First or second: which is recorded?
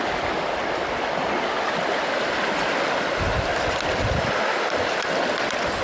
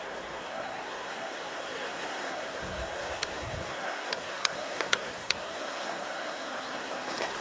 first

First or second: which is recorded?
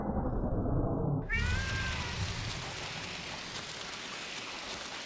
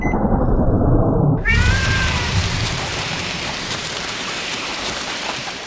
first